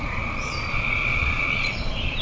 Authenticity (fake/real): fake